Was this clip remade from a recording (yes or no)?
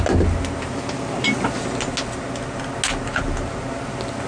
no